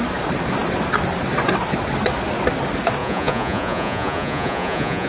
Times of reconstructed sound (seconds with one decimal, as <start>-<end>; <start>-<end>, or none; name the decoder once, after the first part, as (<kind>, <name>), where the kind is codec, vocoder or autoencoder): 3.0-5.1 (vocoder, Vocos)